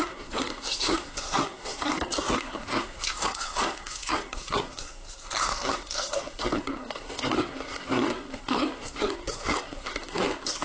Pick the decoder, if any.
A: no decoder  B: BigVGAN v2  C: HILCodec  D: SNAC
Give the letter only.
D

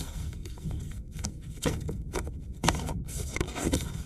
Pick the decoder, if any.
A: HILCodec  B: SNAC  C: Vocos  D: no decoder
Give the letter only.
B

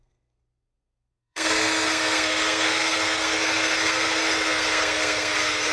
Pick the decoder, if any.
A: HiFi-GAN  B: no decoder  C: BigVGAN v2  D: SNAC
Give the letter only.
D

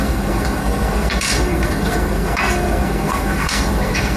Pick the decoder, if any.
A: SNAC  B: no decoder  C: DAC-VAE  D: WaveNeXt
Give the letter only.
A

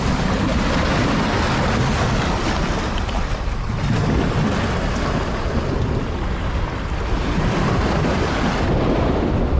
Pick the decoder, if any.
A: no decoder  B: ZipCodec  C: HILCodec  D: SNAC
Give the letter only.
A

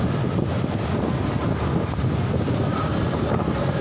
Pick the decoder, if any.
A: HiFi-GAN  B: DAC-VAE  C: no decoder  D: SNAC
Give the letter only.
C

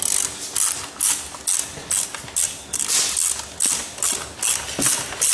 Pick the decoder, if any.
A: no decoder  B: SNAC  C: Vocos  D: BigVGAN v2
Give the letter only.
A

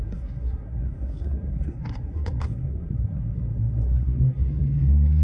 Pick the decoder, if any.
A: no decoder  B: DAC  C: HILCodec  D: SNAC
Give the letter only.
D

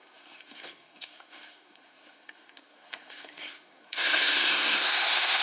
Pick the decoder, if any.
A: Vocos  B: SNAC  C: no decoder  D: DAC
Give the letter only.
B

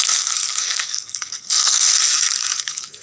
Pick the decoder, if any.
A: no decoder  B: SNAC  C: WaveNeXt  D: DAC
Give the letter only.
B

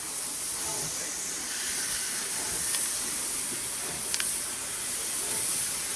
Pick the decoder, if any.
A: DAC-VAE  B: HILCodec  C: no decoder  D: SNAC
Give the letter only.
C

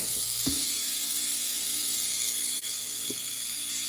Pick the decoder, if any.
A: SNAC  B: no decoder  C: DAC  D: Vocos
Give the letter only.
A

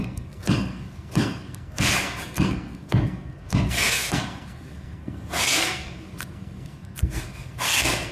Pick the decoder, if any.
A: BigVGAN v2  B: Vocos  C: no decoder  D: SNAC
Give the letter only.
D